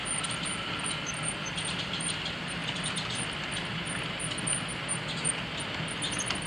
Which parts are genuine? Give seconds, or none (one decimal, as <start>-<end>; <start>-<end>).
2.6-6.5